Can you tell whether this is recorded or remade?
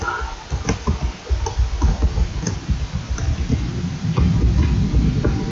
recorded